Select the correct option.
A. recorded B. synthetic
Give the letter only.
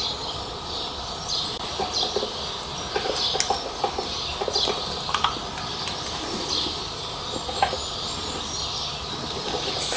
A